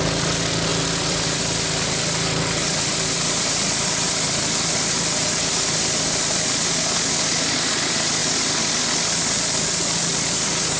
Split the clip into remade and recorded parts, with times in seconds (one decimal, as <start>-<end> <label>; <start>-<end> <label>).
0.0-0.7 recorded; 0.7-3.5 remade; 3.5-8.2 recorded; 8.2-9.8 remade; 9.8-10.8 recorded

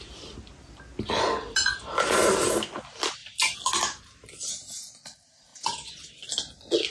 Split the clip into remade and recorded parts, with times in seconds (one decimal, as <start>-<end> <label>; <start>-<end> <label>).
0.0-5.5 recorded; 5.5-6.3 remade; 6.3-6.9 recorded

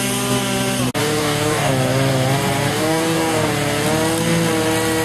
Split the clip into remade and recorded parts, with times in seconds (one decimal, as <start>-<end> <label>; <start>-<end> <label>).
0.0-1.0 recorded; 1.0-1.7 remade; 1.7-2.7 recorded; 2.7-3.5 remade; 3.5-5.0 recorded

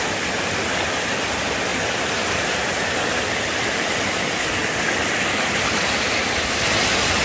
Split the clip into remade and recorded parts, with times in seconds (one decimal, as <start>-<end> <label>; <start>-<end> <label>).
0.0-1.7 recorded; 1.7-2.7 remade; 2.7-7.2 recorded

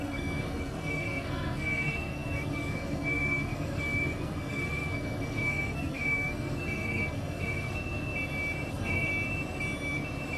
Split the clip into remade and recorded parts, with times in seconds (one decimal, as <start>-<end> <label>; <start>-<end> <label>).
0.0-8.1 remade; 8.1-8.7 recorded; 8.7-9.1 remade; 9.1-10.4 recorded